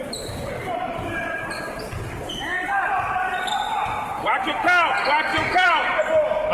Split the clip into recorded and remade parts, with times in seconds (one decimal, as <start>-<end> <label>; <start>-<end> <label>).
0.0-2.5 recorded; 2.5-3.4 remade; 3.4-5.3 recorded; 5.3-6.0 remade; 6.0-6.5 recorded